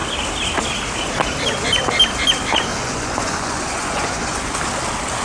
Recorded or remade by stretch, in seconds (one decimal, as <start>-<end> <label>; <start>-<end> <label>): 0.0-2.7 recorded; 2.7-4.6 remade; 4.6-5.2 recorded